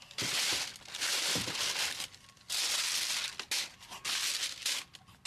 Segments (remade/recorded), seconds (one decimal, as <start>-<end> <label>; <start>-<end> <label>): 0.0-5.3 recorded